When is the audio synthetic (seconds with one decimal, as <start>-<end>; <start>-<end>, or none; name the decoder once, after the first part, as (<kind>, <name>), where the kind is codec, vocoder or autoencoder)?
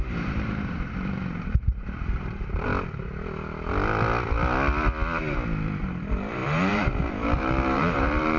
0.0-2.7 (vocoder, BigVGAN v2); 5.8-8.4